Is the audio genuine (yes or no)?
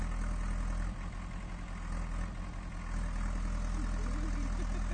yes